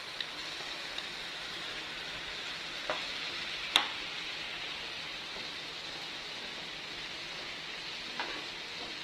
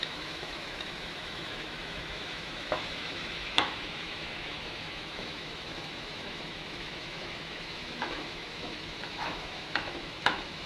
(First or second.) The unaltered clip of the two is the first